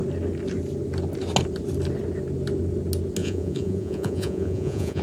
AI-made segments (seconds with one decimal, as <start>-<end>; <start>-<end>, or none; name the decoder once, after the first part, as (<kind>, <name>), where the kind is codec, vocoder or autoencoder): 3.2-5.0 (vocoder, Vocos)